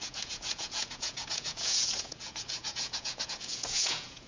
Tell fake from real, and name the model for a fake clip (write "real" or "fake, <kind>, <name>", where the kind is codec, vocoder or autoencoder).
fake, vocoder, Vocos